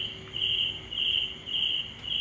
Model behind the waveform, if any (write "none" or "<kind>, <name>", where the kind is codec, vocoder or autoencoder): vocoder, BigVGAN v2